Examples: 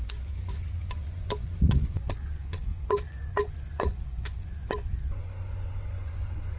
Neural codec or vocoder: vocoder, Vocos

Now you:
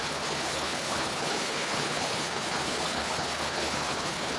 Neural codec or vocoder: codec, HILCodec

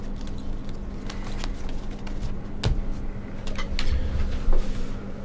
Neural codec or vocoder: none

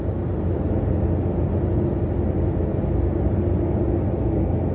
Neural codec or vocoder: none